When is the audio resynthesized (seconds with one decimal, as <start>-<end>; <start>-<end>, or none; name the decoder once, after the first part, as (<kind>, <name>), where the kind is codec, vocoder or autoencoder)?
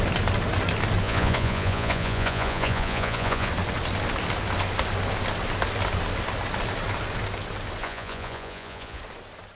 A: 1.0-3.5 (vocoder, Vocos); 7.8-9.0